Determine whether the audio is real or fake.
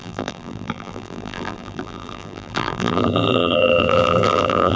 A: fake